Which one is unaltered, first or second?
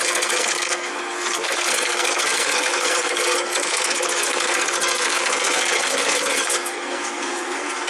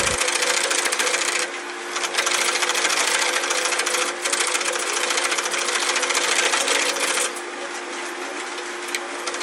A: second